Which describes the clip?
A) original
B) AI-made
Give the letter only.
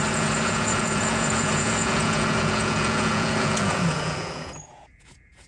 B